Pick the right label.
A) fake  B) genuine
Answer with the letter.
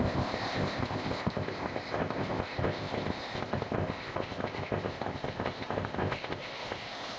A